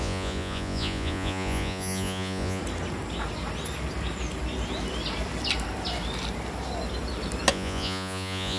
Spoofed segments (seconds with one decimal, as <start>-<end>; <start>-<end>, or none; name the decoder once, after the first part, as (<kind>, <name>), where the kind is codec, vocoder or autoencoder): 0.0-2.6 (vocoder, Vocos); 7.5-8.6